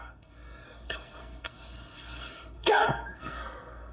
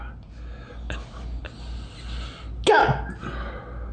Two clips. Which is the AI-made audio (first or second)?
first